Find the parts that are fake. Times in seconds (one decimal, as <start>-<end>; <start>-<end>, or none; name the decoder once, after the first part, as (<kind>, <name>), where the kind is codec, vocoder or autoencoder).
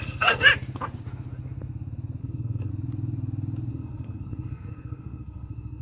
0.0-0.5 (codec, SNAC); 2.2-2.7; 3.7-5.8